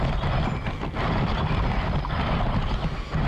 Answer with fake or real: real